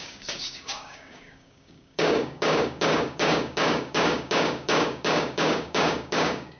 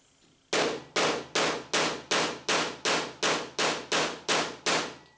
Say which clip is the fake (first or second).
first